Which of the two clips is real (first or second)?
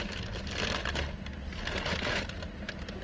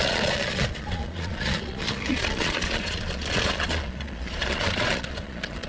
first